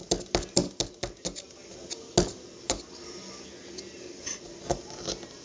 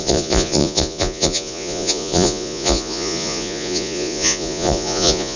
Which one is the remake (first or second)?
second